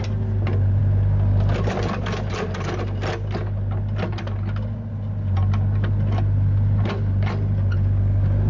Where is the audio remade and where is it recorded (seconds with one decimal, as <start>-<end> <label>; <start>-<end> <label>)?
0.0-8.5 recorded

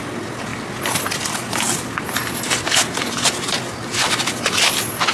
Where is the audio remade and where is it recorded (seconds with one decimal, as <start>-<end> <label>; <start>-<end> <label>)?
0.0-5.1 recorded

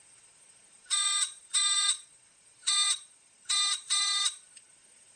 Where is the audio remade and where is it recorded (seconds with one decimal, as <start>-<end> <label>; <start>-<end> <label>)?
0.0-5.2 remade

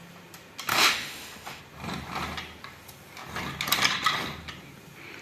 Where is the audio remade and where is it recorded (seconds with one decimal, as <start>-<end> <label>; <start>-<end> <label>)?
0.0-0.7 recorded; 0.7-1.6 remade; 1.6-5.2 recorded

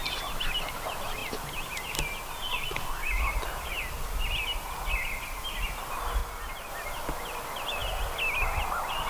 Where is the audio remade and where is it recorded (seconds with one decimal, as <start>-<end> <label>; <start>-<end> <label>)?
0.0-9.1 recorded

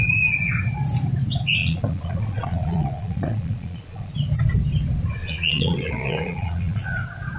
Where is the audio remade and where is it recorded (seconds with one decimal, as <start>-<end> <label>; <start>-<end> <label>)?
0.0-1.6 recorded; 1.6-4.1 remade; 4.1-5.2 recorded; 5.2-7.0 remade; 7.0-7.4 recorded